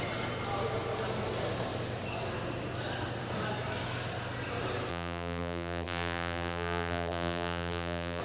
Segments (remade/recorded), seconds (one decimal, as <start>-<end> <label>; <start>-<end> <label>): 0.0-4.9 recorded; 4.9-8.2 remade

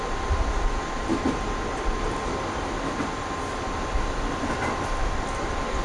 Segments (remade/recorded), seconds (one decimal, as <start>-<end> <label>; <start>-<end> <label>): 0.0-5.8 recorded

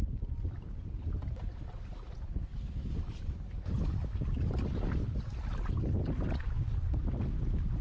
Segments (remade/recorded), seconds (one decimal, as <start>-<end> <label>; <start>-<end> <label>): 0.0-7.8 recorded

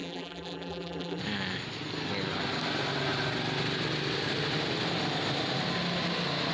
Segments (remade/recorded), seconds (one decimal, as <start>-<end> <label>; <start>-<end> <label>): 0.0-1.2 remade; 1.2-6.5 recorded

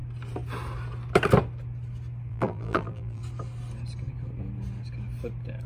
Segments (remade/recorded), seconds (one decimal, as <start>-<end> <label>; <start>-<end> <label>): 0.0-2.3 recorded; 2.3-3.2 remade; 3.2-5.7 recorded

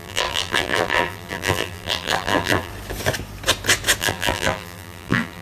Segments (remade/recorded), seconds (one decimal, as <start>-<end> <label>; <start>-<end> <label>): 0.0-2.7 remade; 2.7-4.0 recorded; 4.0-5.4 remade

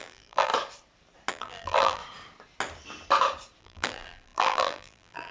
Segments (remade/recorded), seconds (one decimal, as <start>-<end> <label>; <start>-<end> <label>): 0.0-0.5 remade; 0.5-1.3 recorded; 1.3-2.0 remade; 2.0-3.6 recorded; 3.6-5.3 remade